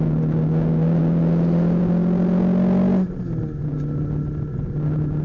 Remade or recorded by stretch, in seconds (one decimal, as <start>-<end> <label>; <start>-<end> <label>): 0.0-5.2 recorded